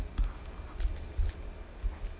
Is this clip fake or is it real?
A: real